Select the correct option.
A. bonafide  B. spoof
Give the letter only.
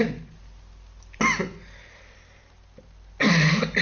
A